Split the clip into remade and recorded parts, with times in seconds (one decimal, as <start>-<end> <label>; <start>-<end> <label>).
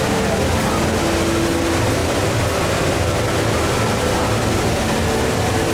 0.0-2.0 recorded; 2.0-4.1 remade; 4.1-5.7 recorded